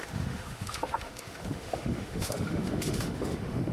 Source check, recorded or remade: remade